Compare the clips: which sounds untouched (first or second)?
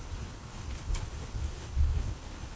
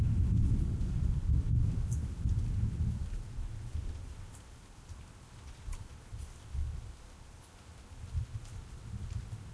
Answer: second